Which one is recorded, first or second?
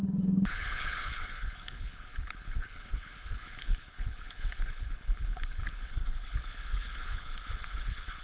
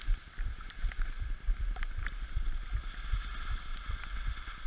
second